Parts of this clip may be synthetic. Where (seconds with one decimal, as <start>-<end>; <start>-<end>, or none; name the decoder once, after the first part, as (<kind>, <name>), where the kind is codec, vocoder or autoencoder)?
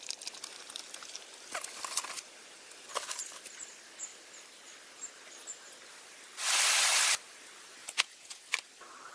7.8-8.4 (vocoder, Vocos)